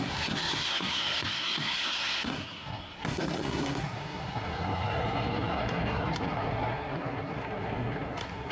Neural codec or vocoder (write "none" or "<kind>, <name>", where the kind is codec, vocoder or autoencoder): codec, SNAC